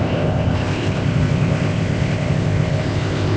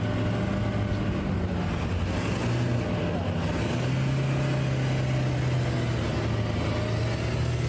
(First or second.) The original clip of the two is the second